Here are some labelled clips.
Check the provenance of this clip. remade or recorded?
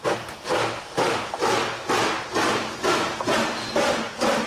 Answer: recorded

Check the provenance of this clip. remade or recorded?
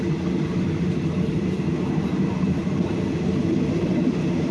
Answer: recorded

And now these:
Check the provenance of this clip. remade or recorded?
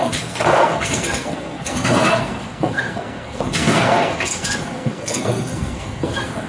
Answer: remade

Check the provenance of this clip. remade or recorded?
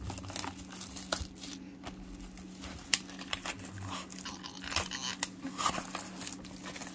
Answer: recorded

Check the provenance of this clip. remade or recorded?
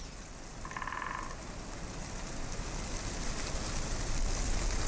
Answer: recorded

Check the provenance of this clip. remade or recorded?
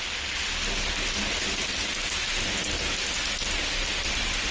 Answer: recorded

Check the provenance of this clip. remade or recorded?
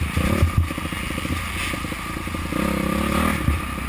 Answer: recorded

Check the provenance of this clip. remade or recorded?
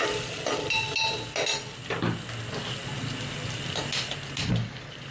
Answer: recorded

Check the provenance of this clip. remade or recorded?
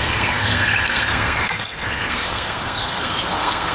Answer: remade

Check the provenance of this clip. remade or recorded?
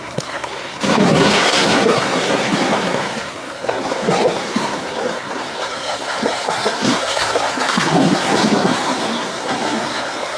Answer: remade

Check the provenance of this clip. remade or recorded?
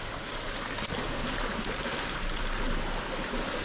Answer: recorded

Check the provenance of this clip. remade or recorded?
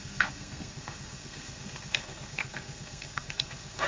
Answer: remade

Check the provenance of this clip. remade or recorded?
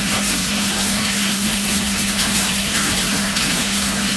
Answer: remade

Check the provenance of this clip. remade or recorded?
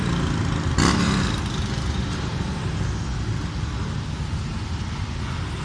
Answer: recorded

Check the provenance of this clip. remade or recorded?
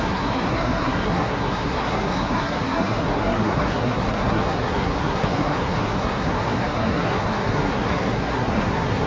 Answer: remade